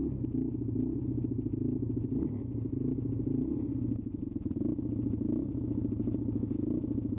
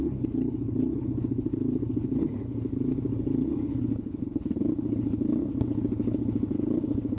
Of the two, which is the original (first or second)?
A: first